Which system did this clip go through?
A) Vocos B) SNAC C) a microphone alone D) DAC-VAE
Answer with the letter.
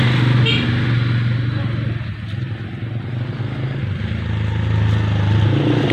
C